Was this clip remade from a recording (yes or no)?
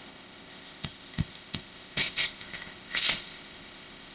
yes